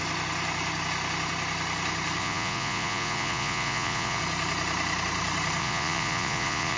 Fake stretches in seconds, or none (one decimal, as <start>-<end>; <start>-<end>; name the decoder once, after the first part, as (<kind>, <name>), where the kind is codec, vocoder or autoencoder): 2.2-4.2 (vocoder, Vocos); 5.6-6.8